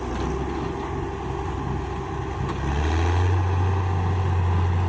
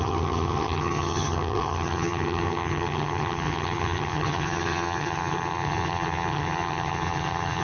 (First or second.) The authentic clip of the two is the first